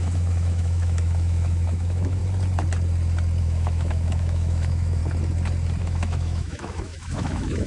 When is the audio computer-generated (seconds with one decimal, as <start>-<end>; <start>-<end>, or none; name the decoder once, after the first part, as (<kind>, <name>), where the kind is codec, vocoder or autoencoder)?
0.0-2.2 (autoencoder, DAC-VAE); 3.4-5.0; 5.8-7.7

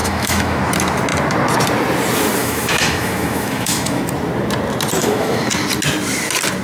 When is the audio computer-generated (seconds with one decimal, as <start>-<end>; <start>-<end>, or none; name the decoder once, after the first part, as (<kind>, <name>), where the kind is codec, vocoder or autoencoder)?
0.0-0.6 (autoencoder, DAC-VAE); 2.4-4.0; 5.0-5.5